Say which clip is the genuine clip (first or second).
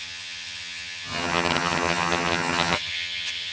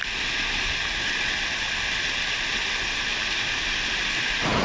second